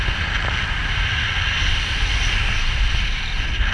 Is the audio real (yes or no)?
yes